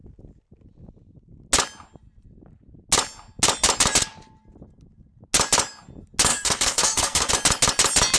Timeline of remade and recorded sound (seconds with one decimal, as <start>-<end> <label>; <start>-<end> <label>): 0.0-6.3 recorded; 6.3-7.3 remade; 7.3-8.2 recorded